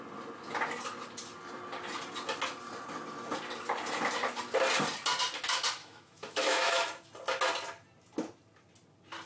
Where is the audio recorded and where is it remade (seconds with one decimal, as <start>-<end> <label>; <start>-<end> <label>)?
0.0-5.8 recorded; 5.8-6.9 remade; 6.9-9.3 recorded